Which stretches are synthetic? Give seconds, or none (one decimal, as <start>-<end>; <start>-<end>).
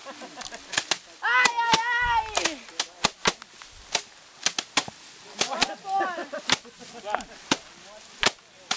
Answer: 6.4-6.9